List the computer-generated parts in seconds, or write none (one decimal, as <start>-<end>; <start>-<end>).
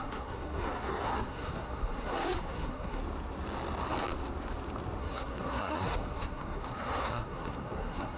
0.0-3.0; 5.0-8.2